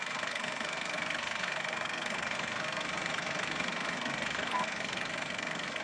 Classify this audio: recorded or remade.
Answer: remade